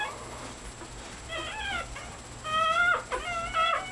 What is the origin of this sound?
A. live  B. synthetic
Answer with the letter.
A